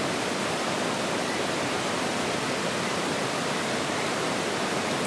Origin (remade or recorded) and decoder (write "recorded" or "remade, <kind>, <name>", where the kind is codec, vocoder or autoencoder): recorded